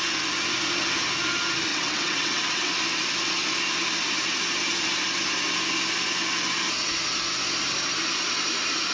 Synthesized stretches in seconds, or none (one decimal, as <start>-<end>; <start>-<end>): 1.7-2.7